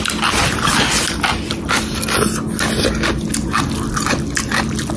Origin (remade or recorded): recorded